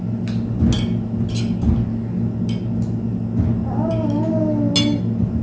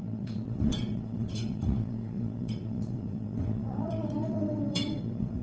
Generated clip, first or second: second